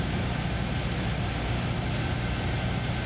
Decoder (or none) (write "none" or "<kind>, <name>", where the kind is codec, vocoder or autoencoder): none